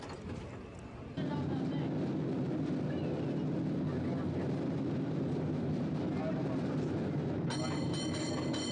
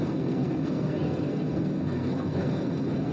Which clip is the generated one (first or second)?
second